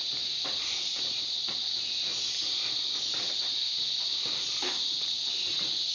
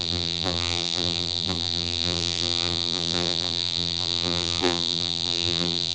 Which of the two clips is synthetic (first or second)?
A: second